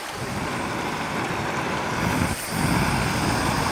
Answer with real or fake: real